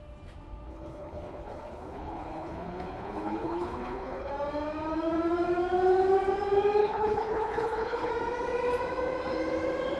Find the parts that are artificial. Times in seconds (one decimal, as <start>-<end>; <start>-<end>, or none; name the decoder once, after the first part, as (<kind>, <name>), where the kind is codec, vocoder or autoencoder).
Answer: 0.7-4.3 (codec, HILCodec); 6.8-8.1